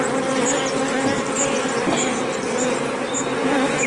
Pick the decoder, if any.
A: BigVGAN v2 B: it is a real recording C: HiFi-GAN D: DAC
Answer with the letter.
B